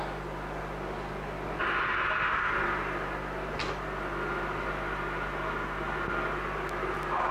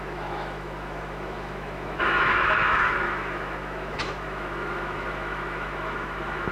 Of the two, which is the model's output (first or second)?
second